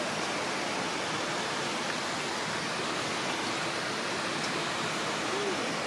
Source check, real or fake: real